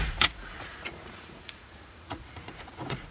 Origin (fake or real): fake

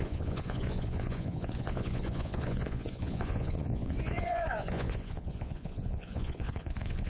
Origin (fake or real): fake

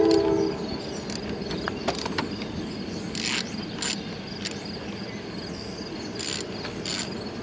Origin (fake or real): real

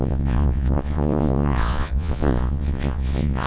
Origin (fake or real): fake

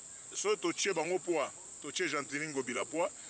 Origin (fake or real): fake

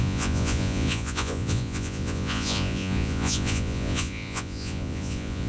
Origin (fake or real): fake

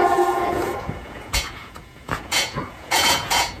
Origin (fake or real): fake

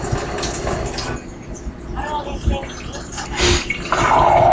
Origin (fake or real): real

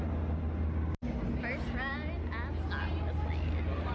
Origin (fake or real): real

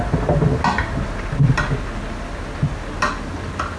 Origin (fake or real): real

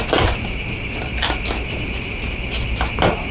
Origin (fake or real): real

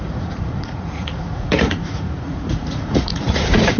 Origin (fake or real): fake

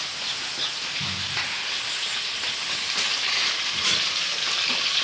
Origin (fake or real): real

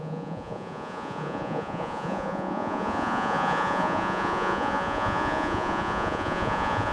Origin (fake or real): fake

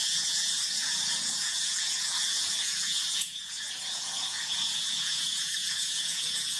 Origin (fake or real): fake